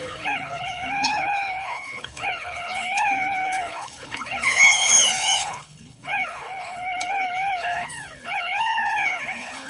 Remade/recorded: remade